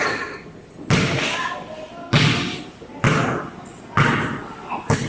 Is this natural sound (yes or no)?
yes